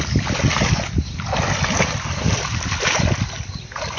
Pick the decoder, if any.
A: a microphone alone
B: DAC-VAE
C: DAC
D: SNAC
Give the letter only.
A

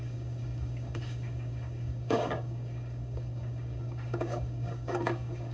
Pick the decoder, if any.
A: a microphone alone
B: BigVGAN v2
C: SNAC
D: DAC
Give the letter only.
D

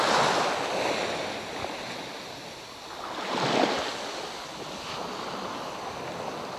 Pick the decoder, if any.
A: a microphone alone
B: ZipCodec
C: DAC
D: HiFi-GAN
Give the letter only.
A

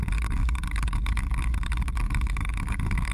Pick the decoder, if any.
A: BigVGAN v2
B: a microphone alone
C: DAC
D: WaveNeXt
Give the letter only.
C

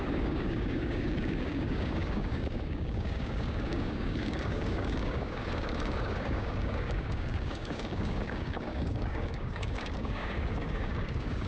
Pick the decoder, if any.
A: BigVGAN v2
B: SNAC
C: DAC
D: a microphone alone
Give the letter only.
C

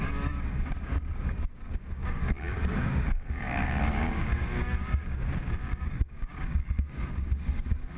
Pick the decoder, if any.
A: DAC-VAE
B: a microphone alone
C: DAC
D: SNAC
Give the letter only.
C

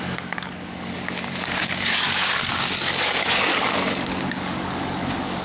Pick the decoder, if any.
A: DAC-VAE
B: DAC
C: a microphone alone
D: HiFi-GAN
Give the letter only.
B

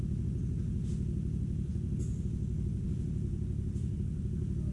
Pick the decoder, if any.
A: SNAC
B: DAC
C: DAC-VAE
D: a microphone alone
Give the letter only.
D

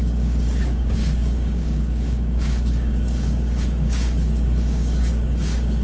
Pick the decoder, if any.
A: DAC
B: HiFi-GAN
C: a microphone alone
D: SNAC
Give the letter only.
A